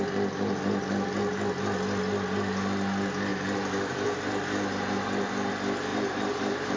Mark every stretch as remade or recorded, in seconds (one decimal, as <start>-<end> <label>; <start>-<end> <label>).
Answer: 0.0-3.3 recorded; 3.3-5.5 remade; 5.5-5.9 recorded; 5.9-6.8 remade

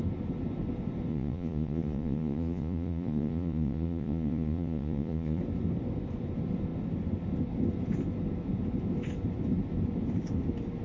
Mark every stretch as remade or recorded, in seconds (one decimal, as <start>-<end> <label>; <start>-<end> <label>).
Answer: 0.0-1.1 recorded; 1.1-5.4 remade; 5.4-10.8 recorded

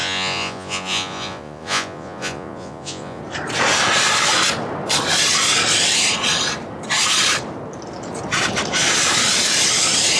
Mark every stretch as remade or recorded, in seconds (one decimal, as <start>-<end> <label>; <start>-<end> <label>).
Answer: 0.0-3.2 remade; 3.2-10.2 recorded